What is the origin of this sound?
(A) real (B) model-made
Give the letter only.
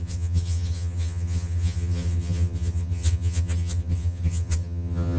B